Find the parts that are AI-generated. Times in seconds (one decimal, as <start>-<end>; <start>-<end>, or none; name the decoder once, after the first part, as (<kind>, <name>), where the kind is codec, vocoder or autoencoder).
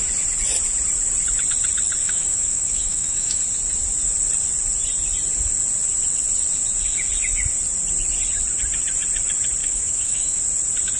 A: 2.0-3.4 (autoencoder, DAC-VAE); 9.6-10.4